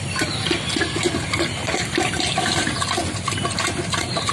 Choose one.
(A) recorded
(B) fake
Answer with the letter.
A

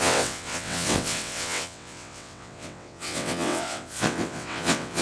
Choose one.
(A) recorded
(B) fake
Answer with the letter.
B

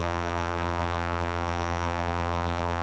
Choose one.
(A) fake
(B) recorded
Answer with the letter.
A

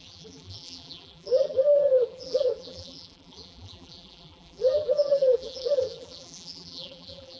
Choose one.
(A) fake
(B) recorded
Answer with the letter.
A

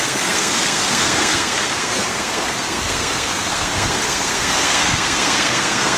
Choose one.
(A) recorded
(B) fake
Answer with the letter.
B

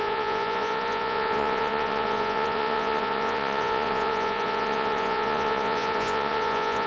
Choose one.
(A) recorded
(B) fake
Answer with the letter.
B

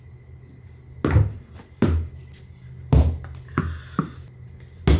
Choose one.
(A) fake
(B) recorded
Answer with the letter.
B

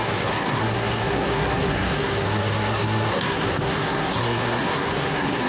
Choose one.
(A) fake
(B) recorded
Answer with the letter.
A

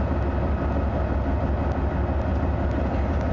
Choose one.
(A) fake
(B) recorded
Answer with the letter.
B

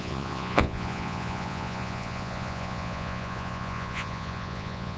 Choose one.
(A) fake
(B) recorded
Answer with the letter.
A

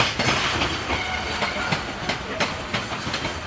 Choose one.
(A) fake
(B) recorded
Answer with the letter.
B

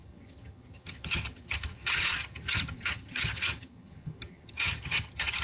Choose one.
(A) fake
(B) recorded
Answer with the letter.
A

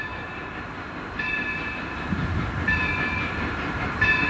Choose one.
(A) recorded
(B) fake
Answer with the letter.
B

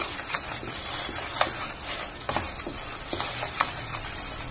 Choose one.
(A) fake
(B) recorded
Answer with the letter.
A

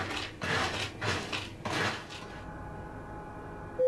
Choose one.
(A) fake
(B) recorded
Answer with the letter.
B